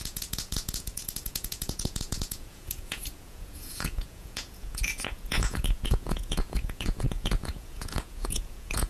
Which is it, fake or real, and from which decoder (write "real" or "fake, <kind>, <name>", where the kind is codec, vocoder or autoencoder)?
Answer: fake, vocoder, Vocos